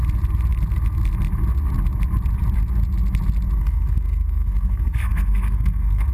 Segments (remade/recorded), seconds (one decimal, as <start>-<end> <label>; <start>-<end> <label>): 0.0-3.6 recorded; 3.6-6.1 remade